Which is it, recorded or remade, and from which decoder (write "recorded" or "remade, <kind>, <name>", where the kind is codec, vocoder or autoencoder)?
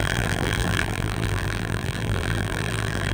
remade, vocoder, BigVGAN v2